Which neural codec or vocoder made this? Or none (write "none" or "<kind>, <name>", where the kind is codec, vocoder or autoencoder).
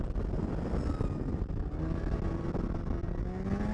none